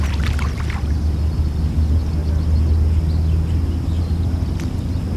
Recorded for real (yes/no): yes